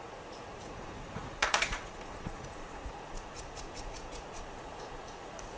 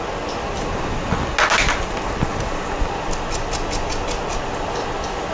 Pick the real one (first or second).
second